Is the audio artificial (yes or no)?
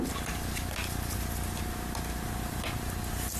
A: no